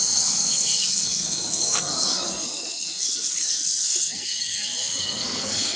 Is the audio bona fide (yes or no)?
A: no